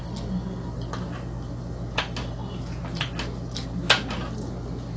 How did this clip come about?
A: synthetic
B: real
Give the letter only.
B